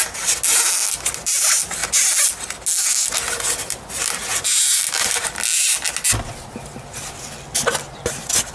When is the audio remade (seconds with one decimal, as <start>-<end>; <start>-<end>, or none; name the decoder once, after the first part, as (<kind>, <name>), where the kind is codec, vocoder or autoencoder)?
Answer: none